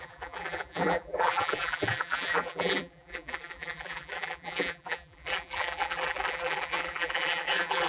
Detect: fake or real fake